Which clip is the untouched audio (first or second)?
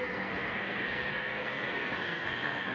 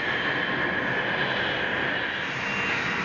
second